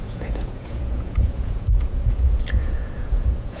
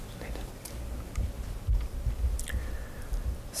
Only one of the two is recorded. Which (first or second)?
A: second